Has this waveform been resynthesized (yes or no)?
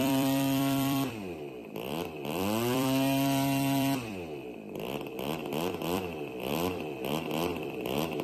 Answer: yes